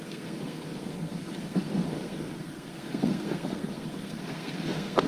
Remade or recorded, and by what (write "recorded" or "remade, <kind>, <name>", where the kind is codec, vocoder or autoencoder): remade, codec, SNAC